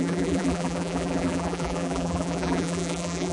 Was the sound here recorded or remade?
remade